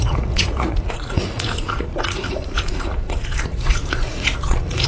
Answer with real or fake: fake